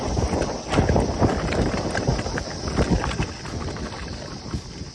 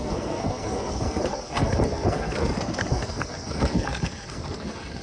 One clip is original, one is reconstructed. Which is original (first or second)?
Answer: first